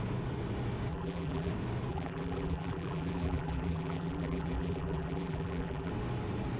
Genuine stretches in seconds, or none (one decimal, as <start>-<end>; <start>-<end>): 0.0-0.9; 1.5-1.9; 5.9-6.6